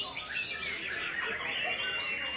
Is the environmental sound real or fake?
real